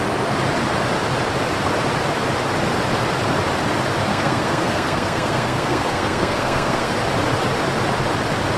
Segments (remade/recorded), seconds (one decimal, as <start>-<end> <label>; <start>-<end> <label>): 0.0-4.1 recorded; 4.1-6.9 remade; 6.9-8.6 recorded